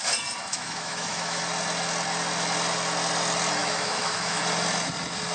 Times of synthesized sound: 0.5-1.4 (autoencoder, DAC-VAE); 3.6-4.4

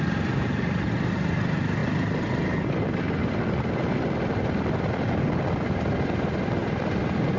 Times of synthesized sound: none

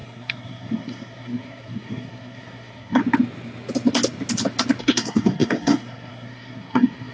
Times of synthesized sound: 0.0-3.0 (codec, SNAC); 4.8-7.1

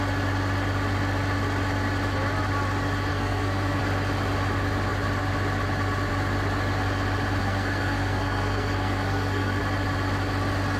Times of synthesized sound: 3.1-3.8 (codec, SNAC); 7.4-9.6